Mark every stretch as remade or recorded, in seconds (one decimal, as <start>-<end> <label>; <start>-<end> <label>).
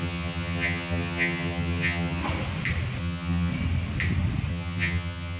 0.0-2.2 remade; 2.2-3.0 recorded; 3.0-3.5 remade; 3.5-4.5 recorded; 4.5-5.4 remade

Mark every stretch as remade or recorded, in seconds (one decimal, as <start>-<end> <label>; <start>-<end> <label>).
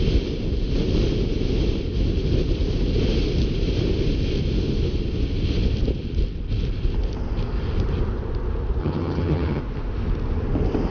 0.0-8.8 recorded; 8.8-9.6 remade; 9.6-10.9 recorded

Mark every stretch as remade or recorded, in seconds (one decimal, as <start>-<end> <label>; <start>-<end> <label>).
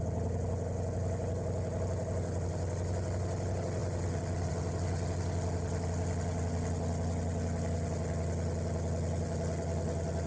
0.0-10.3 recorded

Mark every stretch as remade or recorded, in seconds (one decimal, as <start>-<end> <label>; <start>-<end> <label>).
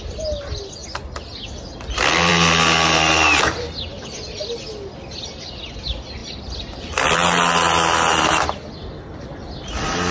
0.0-10.1 recorded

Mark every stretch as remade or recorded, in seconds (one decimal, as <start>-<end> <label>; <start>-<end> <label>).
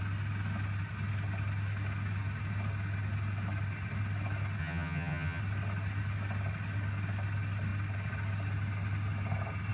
0.0-4.6 recorded; 4.6-5.4 remade; 5.4-9.7 recorded